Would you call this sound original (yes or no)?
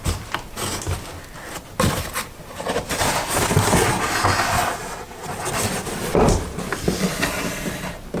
yes